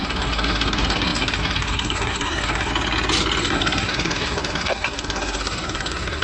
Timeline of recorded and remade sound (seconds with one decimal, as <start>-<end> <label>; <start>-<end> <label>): 0.0-2.7 remade; 2.7-3.4 recorded; 3.4-6.2 remade